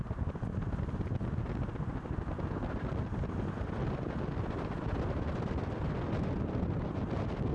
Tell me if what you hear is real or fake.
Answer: real